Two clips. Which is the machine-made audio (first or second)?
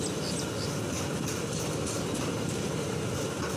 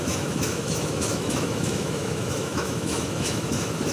second